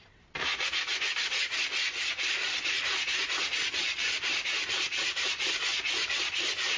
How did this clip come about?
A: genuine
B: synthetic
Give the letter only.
B